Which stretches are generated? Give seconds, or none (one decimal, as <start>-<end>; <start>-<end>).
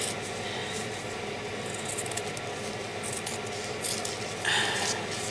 0.6-1.5